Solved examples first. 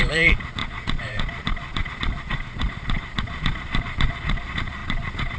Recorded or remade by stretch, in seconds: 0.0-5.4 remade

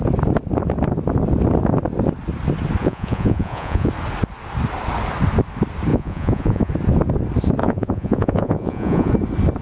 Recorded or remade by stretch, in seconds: 0.0-2.8 recorded; 2.8-3.9 remade; 3.9-5.9 recorded; 5.9-6.7 remade; 6.7-7.6 recorded; 7.6-9.1 remade; 9.1-9.6 recorded

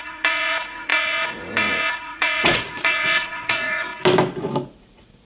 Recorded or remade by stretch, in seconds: 0.0-3.9 remade; 3.9-4.8 recorded; 4.8-5.2 remade

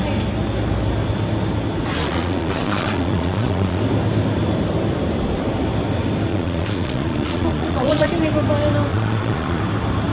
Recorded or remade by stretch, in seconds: 0.0-2.0 recorded; 2.0-3.8 remade; 3.8-6.3 recorded; 6.3-8.1 remade; 8.1-8.9 recorded; 8.9-9.6 remade; 9.6-10.1 recorded

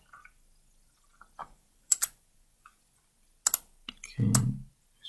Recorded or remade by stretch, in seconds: 0.0-1.4 recorded; 1.4-3.0 remade; 3.0-5.1 recorded

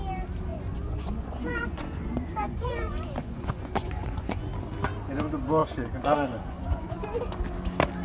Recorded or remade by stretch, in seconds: 0.0-0.5 recorded; 0.5-4.5 remade; 4.5-5.6 recorded; 5.6-7.3 remade; 7.3-8.0 recorded

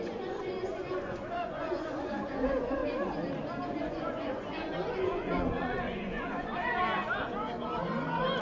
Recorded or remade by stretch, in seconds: 0.0-2.8 remade; 2.8-3.8 recorded; 3.8-6.8 remade; 6.8-8.4 recorded